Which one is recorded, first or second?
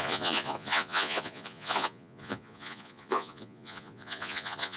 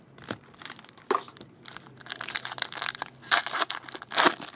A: second